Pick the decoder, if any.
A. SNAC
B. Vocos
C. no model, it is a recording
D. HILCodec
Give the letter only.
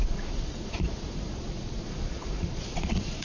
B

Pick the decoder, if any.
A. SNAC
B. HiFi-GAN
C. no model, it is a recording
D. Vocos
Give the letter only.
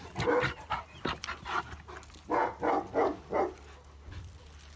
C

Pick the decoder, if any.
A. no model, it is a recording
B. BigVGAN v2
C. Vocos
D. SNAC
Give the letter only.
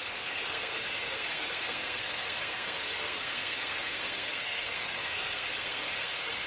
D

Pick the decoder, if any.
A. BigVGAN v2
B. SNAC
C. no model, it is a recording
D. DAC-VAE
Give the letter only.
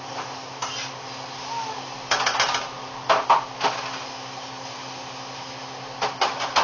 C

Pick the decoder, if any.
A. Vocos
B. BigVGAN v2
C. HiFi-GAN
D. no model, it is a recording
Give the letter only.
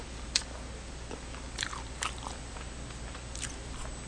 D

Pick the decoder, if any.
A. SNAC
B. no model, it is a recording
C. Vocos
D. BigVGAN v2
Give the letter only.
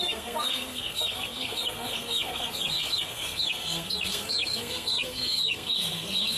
A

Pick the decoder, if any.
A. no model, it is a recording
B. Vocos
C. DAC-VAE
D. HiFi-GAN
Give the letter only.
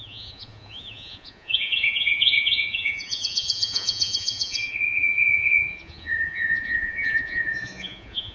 B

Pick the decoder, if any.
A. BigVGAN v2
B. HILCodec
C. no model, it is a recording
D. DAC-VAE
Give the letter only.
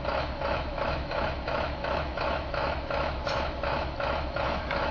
D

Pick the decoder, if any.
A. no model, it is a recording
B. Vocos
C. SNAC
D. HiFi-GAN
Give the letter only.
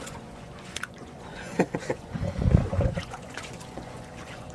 B